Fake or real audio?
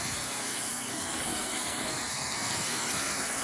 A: fake